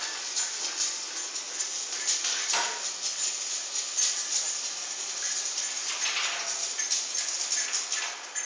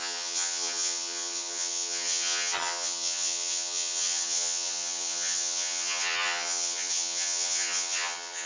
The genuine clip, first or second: first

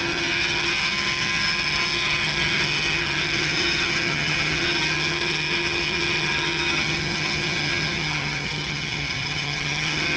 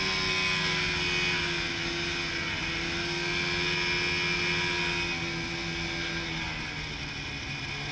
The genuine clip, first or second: second